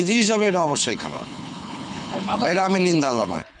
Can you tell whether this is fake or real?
fake